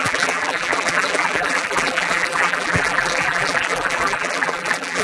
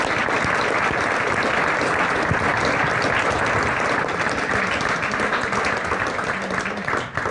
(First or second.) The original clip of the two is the second